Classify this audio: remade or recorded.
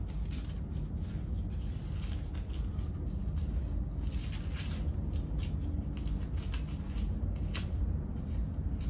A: recorded